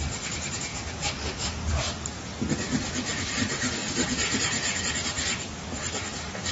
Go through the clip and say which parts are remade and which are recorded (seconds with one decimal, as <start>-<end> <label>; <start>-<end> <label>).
0.0-0.7 remade; 0.7-3.3 recorded; 3.3-6.5 remade